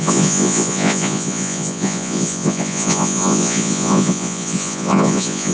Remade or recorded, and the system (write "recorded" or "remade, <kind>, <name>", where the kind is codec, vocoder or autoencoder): remade, vocoder, Vocos